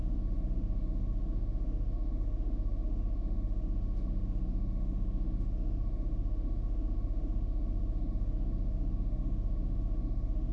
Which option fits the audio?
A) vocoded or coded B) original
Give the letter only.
A